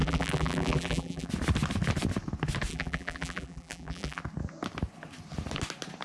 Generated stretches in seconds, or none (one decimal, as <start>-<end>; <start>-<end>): 0.0-1.3; 2.7-4.2